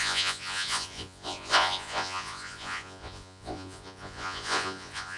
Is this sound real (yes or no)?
no